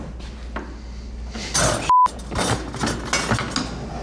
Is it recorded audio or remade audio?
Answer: recorded